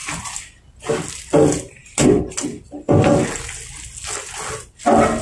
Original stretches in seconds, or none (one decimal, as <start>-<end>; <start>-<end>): 0.0-5.2